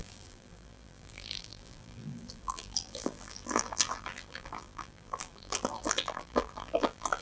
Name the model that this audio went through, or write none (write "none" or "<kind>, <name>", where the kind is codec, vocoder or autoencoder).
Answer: vocoder, BigVGAN v2